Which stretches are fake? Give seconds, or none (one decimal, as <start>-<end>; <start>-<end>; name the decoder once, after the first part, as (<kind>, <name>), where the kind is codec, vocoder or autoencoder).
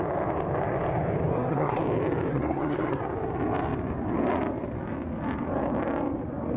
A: 1.3-1.8 (codec, SNAC); 2.3-3.0